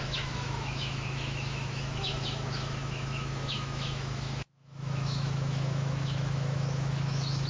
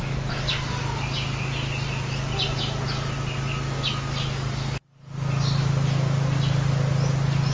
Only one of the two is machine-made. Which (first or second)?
first